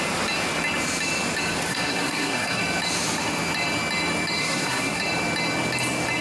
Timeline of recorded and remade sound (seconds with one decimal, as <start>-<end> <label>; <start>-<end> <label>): 0.0-1.7 recorded; 1.7-2.6 remade; 2.6-4.4 recorded; 4.4-5.0 remade; 5.0-6.2 recorded